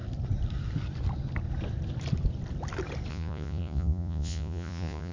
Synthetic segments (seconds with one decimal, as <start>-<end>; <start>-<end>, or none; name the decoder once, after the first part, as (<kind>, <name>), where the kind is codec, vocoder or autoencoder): 3.1-5.1 (vocoder, Vocos)